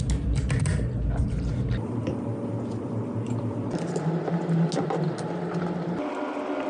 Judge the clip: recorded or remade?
recorded